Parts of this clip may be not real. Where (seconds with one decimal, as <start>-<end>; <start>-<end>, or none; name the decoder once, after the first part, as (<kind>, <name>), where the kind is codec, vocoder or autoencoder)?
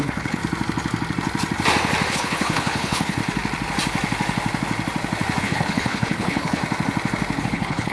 0.0-0.4 (codec, HILCodec); 2.1-3.2; 5.4-6.6; 7.4-7.9